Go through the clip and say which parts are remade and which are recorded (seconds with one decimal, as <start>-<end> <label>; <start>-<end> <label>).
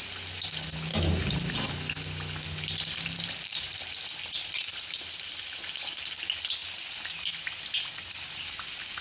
0.0-9.0 recorded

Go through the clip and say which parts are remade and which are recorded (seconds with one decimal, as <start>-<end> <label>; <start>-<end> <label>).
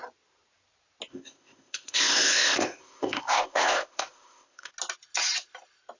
0.0-1.1 recorded; 1.1-4.7 remade; 4.7-6.0 recorded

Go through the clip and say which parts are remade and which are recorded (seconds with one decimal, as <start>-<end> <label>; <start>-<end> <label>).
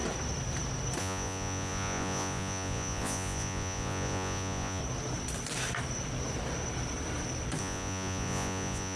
0.0-1.0 recorded; 1.0-4.8 remade; 4.8-7.6 recorded; 7.6-9.0 remade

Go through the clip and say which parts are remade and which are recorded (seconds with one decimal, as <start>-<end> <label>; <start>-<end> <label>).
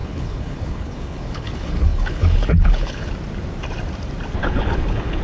0.0-3.1 remade; 3.1-4.4 recorded; 4.4-5.2 remade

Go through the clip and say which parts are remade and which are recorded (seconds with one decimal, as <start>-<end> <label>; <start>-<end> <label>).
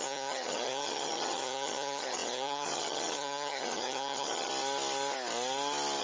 0.0-4.5 remade; 4.5-6.0 recorded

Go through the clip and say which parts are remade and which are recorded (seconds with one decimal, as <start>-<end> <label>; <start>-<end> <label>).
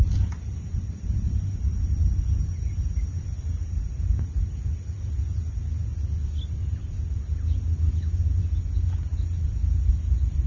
0.0-10.5 recorded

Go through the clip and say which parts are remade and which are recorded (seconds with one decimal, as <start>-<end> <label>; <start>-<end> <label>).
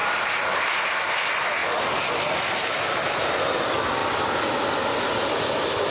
0.0-5.9 recorded